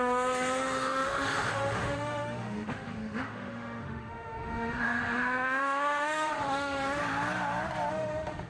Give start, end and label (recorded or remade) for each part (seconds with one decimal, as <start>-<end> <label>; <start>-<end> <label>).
0.0-7.0 remade; 7.0-7.9 recorded; 7.9-8.5 remade